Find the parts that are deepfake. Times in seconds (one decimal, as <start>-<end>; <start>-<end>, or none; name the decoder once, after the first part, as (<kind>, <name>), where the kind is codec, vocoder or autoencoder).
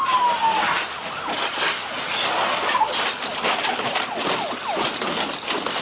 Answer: none